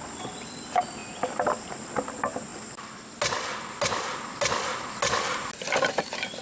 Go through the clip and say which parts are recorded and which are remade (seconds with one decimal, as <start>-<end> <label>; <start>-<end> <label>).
0.0-6.4 recorded